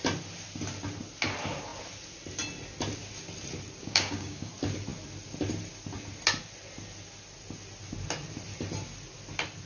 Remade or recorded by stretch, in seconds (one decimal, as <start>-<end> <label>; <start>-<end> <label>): 0.0-3.8 recorded; 3.8-4.5 remade; 4.5-9.7 recorded